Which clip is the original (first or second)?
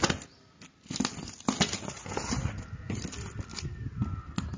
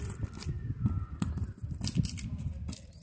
first